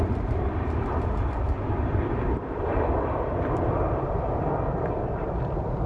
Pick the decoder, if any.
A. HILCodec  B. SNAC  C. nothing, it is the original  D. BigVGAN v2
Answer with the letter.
D